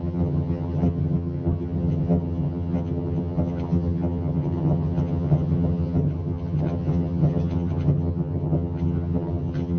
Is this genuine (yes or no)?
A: no